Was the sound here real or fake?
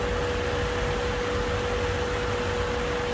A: real